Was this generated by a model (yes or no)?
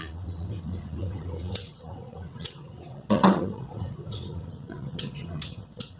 yes